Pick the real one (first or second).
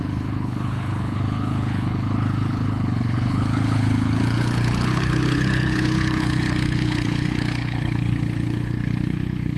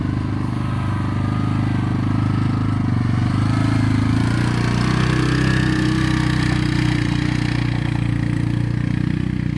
second